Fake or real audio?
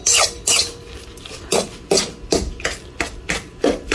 real